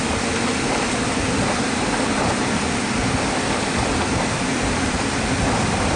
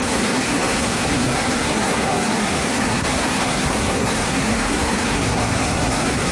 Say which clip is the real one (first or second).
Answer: first